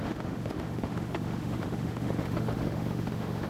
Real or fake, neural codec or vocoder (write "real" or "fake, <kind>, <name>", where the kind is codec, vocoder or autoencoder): fake, autoencoder, DAC-VAE